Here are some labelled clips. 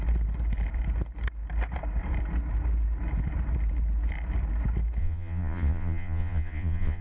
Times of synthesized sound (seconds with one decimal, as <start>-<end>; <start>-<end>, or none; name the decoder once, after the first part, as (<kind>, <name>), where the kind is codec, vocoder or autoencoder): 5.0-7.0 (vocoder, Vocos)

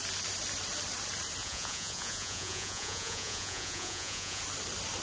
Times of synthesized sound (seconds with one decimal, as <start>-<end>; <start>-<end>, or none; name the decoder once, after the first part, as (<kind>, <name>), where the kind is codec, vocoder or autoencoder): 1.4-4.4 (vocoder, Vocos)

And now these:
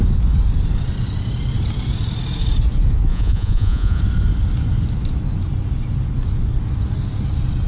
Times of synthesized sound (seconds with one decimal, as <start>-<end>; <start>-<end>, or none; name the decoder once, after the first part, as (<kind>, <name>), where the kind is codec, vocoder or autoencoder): 3.1-4.0 (vocoder, Vocos)

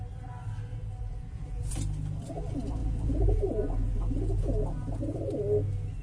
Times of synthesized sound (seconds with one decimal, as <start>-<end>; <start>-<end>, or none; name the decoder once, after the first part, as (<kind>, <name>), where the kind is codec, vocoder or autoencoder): 0.7-1.6 (vocoder, Vocos); 2.8-5.2